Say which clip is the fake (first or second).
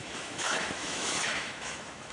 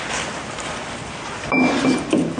first